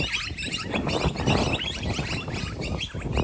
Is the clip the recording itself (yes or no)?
yes